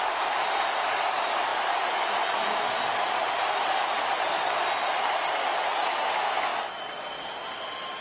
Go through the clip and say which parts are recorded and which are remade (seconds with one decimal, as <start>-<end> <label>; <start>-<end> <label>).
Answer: 0.0-8.0 recorded